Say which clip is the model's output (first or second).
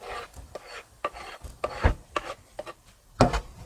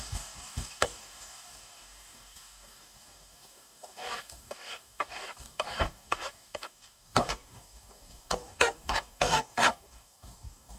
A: second